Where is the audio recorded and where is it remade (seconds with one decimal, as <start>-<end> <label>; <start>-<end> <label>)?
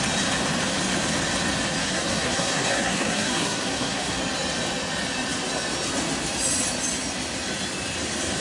0.0-1.8 recorded; 1.8-4.2 remade; 4.2-8.4 recorded